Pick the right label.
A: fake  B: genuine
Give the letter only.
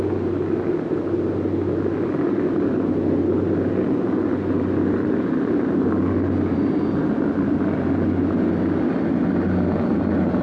B